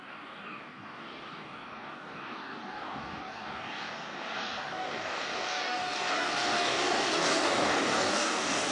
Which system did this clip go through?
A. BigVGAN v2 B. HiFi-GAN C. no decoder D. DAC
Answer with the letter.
D